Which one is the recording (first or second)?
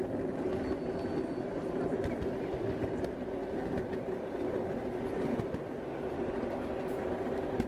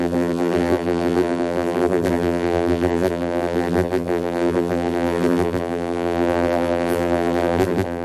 first